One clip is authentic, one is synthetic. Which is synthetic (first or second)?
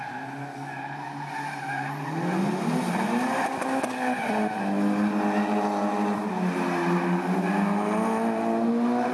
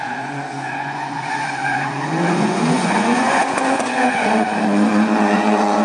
second